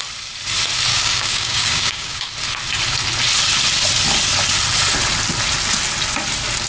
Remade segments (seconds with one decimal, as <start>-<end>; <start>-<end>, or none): 0.9-2.2